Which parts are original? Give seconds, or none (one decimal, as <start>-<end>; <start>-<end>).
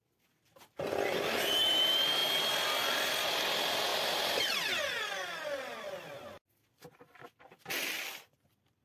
2.2-3.3; 3.9-5.0